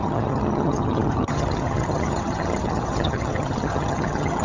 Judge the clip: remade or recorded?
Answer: remade